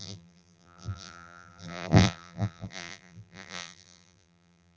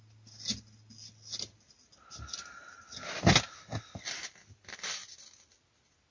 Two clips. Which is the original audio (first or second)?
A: second